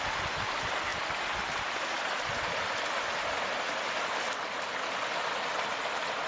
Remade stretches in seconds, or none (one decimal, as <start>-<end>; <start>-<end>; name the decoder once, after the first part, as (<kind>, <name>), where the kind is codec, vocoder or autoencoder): none